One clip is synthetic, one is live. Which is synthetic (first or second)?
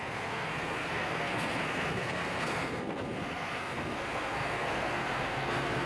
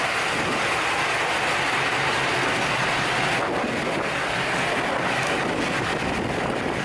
first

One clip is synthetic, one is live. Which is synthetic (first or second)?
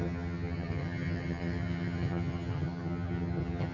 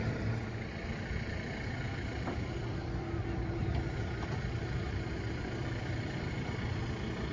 first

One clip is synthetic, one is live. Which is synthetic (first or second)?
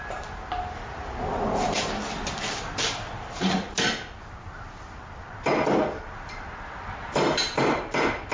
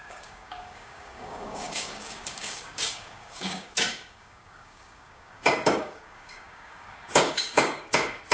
second